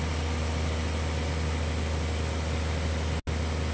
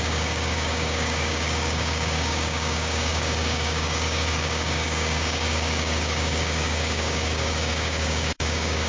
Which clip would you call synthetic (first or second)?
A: second